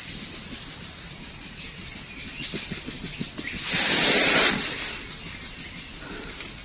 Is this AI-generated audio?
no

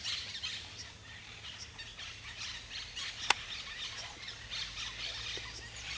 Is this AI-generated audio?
no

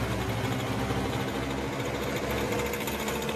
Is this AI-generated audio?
no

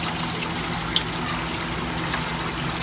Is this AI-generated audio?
no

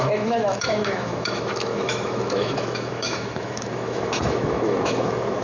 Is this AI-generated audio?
yes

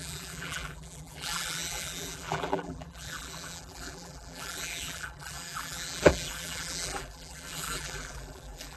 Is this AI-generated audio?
yes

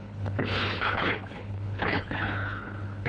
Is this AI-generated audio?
yes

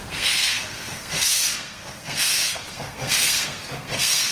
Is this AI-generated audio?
yes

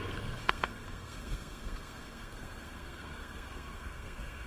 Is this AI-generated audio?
yes